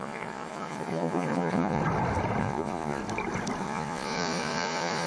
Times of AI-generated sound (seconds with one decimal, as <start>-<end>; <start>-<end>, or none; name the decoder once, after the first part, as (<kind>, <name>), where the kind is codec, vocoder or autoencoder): 0.0-1.8 (vocoder, Vocos); 2.4-3.0; 3.6-5.1